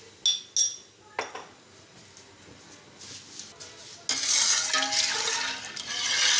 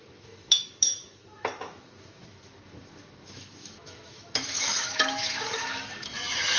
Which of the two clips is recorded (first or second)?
first